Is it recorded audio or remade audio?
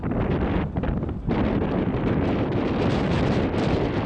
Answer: remade